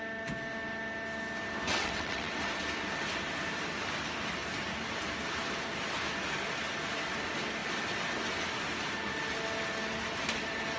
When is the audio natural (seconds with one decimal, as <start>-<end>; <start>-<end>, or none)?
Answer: 0.0-1.7; 2.4-10.8